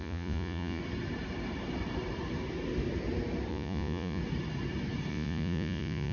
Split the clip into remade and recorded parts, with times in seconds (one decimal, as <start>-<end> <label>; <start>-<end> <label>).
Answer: 0.0-0.8 remade; 0.8-3.5 recorded; 3.5-4.2 remade; 4.2-5.1 recorded; 5.1-6.1 remade